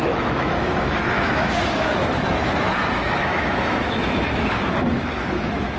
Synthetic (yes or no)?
yes